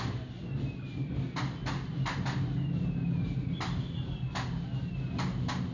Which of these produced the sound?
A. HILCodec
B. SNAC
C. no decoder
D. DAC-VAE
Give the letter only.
C